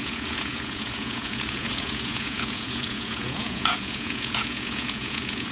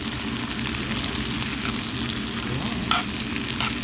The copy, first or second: first